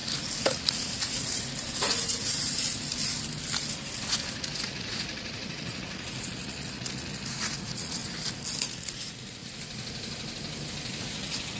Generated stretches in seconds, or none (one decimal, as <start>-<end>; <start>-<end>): 0.5-1.2; 4.4-8.0; 8.6-9.4; 11.0-11.6